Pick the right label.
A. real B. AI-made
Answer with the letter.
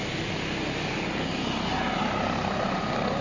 A